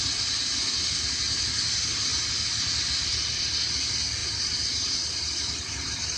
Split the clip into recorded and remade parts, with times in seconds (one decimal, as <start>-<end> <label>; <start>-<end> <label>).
0.0-6.2 recorded